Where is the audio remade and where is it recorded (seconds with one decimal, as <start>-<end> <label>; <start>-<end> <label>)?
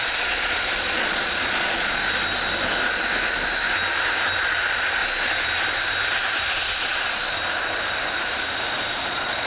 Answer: 0.0-2.0 remade; 2.0-4.4 recorded; 4.4-5.0 remade; 5.0-6.5 recorded; 6.5-7.2 remade; 7.2-9.0 recorded; 9.0-9.5 remade